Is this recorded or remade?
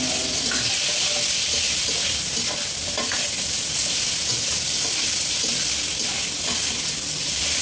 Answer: recorded